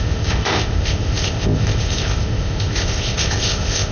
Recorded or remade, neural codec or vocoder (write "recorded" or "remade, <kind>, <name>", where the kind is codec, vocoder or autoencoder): remade, codec, ZipCodec